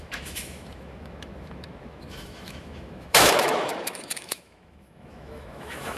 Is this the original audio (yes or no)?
no